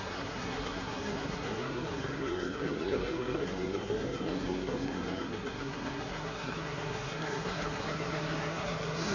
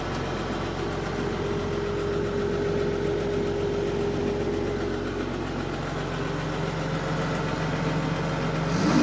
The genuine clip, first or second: second